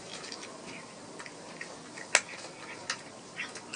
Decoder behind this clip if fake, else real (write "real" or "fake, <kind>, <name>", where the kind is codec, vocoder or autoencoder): real